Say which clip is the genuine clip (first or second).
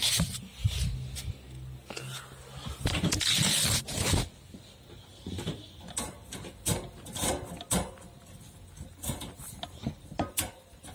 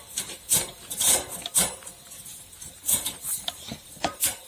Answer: first